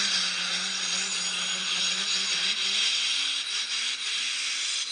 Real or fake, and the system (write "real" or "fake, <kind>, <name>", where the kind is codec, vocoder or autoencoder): real